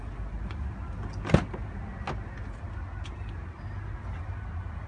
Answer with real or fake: real